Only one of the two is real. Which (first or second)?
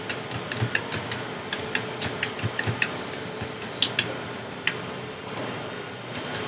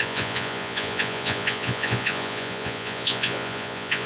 first